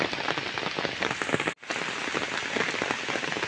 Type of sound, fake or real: real